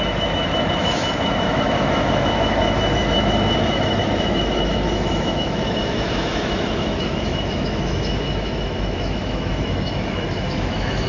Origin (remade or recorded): remade